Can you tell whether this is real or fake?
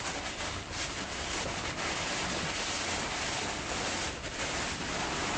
real